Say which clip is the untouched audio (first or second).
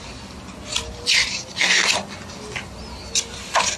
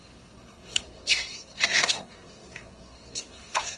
first